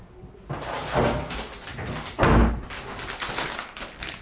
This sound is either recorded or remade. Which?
recorded